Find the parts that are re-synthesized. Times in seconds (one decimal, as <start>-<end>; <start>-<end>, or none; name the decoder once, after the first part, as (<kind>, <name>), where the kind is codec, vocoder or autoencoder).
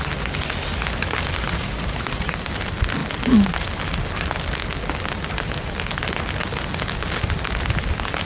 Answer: 1.4-2.3 (vocoder, Vocos)